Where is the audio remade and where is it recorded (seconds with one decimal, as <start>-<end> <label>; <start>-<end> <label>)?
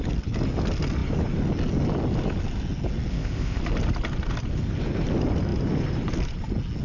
0.0-3.1 recorded; 3.1-3.6 remade; 3.6-6.8 recorded